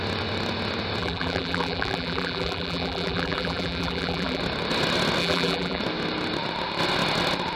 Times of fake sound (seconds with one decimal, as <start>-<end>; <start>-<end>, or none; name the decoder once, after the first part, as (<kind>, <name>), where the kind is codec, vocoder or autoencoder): 1.0-4.4 (vocoder, BigVGAN v2); 5.2-5.8